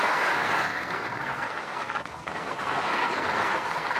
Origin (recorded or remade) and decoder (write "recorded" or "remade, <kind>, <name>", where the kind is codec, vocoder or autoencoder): remade, codec, SNAC